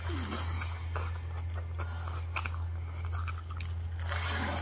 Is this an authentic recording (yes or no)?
yes